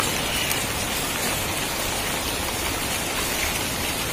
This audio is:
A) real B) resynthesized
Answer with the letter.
B